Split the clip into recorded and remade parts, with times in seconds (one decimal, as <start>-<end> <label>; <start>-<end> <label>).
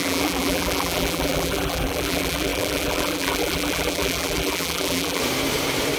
0.0-5.2 remade; 5.2-6.0 recorded